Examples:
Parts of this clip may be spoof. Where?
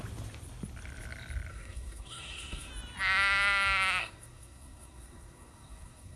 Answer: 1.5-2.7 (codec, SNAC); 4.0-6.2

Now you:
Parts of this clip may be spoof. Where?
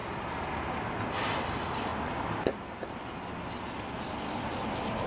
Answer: 1.9-2.9 (vocoder, BigVGAN v2)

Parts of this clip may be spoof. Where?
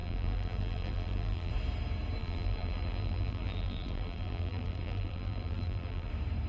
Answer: 0.0-1.5 (vocoder, BigVGAN v2); 2.2-6.1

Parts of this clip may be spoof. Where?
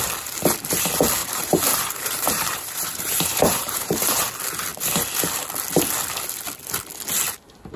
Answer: 1.2-4.3 (vocoder, BigVGAN v2)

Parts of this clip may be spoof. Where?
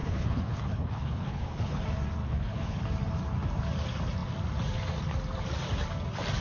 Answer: 0.0-1.8 (codec, HILCodec); 2.2-2.8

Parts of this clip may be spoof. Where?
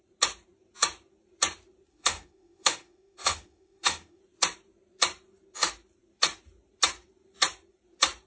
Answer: 1.9-4.2 (autoencoder, DAC-VAE)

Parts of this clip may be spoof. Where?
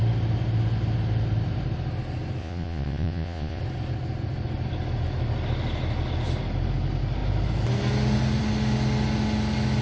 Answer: 2.4-3.6 (vocoder, Vocos)